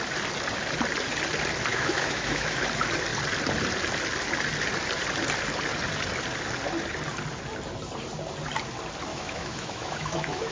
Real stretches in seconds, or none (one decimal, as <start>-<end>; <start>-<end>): 0.0-1.7; 2.6-9.1